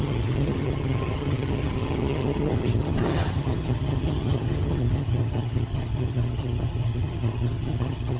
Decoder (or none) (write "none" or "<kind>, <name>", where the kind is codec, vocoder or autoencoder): vocoder, HiFi-GAN